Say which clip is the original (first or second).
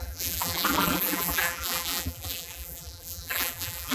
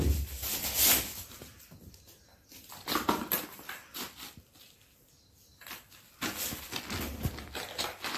second